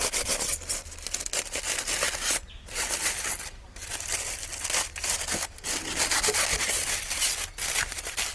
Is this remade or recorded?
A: recorded